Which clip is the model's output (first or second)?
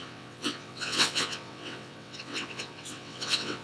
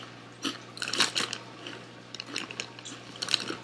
first